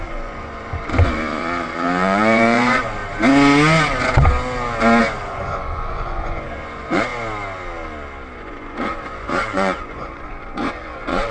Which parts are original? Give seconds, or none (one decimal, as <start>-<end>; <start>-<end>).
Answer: 3.0-5.0; 7.1-8.4